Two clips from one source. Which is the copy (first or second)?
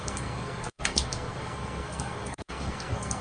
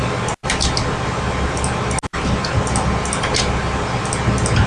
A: first